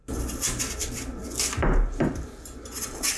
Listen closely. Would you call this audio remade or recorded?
recorded